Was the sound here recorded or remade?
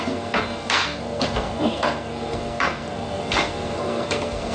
remade